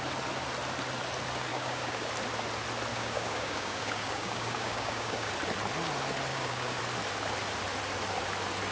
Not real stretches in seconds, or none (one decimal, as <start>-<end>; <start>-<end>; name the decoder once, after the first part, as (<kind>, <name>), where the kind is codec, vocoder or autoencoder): 1.5-2.1 (codec, DAC); 2.9-5.3; 6.3-6.8